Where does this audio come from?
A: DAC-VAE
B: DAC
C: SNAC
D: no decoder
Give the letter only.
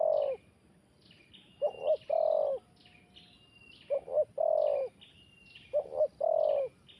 D